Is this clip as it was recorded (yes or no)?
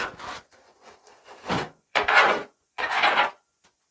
no